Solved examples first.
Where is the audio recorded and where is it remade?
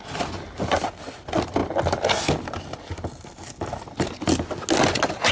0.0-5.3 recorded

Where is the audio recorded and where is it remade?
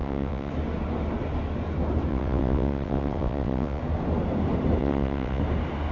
0.0-0.5 remade; 0.5-2.1 recorded; 2.1-3.8 remade; 3.8-4.8 recorded; 4.8-5.4 remade; 5.4-5.9 recorded